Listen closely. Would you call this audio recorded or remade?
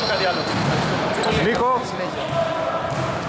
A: recorded